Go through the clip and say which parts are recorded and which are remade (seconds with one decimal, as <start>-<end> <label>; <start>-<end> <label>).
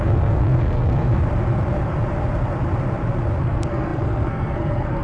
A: 0.0-1.2 remade; 1.2-3.4 recorded; 3.4-5.0 remade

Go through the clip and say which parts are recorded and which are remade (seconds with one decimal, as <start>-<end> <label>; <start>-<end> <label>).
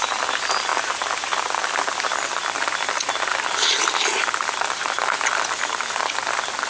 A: 0.0-6.7 recorded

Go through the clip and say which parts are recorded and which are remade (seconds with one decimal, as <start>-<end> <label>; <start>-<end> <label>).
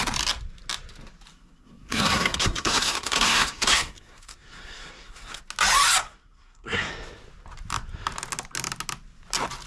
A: 0.0-1.3 recorded; 1.3-5.4 remade; 5.4-6.0 recorded; 6.0-6.9 remade; 6.9-9.7 recorded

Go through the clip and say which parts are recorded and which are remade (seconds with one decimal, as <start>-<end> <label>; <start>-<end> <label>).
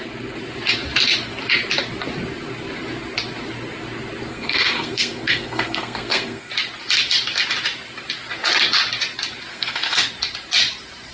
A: 0.0-4.3 recorded; 4.3-6.5 remade; 6.5-9.5 recorded; 9.5-10.1 remade; 10.1-11.1 recorded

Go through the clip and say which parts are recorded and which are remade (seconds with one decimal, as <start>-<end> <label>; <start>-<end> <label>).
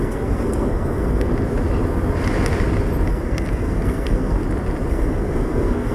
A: 0.0-1.3 remade; 1.3-3.1 recorded; 3.1-4.4 remade; 4.4-4.9 recorded; 4.9-5.9 remade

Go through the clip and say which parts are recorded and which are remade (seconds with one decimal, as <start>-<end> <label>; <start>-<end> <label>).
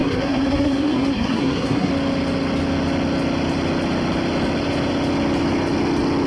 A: 0.0-1.9 remade; 1.9-6.3 recorded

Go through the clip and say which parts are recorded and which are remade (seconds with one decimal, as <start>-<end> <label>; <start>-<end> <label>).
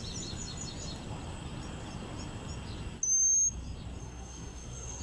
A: 0.0-4.0 recorded; 4.0-5.0 remade